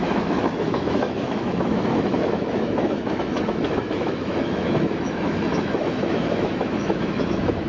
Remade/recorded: remade